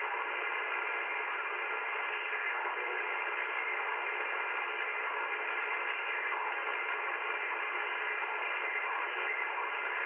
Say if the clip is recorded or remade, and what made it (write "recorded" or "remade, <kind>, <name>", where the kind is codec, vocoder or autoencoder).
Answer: recorded